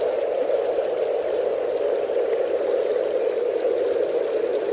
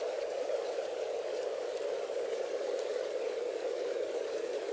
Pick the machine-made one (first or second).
second